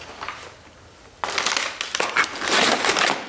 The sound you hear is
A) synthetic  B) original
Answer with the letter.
B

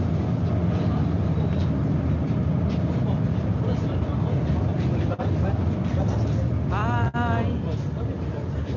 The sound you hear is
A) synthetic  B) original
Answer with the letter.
B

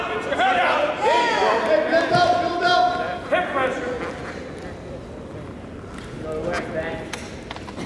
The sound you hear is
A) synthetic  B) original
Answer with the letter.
B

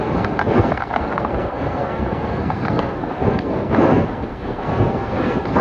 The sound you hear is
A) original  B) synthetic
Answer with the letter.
B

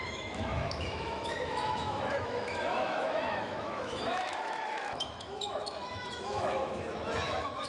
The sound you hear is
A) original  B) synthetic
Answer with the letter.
B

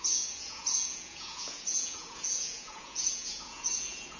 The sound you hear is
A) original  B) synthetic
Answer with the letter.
B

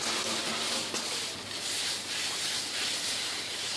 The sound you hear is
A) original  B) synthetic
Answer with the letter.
A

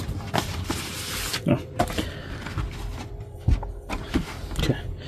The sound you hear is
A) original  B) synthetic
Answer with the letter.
A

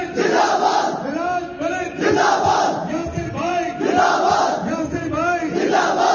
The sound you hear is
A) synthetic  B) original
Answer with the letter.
B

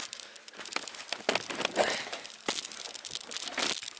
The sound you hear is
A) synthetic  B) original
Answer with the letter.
B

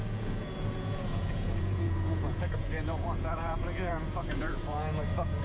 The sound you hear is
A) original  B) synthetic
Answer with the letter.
B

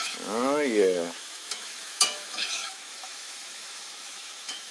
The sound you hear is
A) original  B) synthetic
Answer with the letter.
B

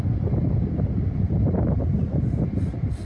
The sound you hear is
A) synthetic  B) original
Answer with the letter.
B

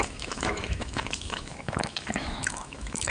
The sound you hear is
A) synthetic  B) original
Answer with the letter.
A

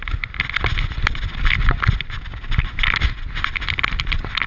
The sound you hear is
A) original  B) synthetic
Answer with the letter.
A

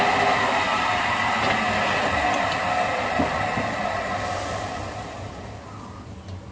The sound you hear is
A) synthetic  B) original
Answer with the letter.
B